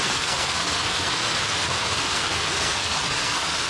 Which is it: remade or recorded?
remade